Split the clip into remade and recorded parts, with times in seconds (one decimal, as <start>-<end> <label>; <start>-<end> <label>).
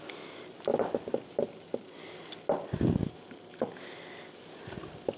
0.0-5.2 recorded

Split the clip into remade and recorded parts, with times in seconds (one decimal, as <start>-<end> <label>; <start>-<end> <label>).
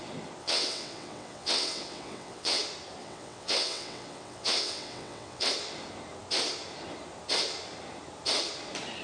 0.0-0.4 recorded; 0.4-2.6 remade; 2.6-3.0 recorded; 3.0-5.5 remade; 5.5-9.0 recorded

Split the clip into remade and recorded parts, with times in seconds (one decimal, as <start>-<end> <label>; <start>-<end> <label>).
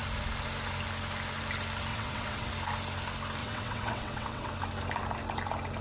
0.0-1.9 recorded; 1.9-2.5 remade; 2.5-3.4 recorded; 3.4-4.5 remade; 4.5-5.8 recorded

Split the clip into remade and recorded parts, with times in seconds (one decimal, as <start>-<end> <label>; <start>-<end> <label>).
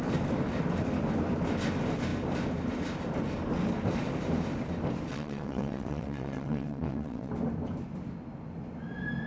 0.0-5.1 recorded; 5.1-7.3 remade; 7.3-9.3 recorded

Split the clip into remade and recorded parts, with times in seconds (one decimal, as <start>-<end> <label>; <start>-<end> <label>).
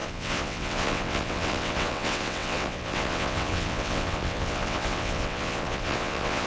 0.0-6.5 remade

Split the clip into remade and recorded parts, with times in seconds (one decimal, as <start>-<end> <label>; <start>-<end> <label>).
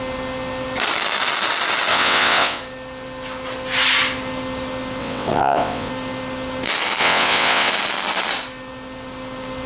0.0-1.9 recorded; 1.9-2.6 remade; 2.6-5.0 recorded; 5.0-5.9 remade; 5.9-7.0 recorded; 7.0-7.7 remade; 7.7-9.7 recorded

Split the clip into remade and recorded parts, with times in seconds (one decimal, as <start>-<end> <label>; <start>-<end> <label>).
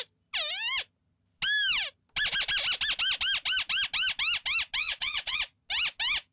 0.0-4.8 recorded; 4.8-5.4 remade; 5.4-6.3 recorded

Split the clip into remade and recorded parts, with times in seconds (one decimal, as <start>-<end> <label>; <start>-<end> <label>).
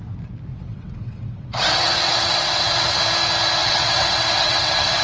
0.0-0.5 recorded; 0.5-3.0 remade; 3.0-3.6 recorded; 3.6-5.0 remade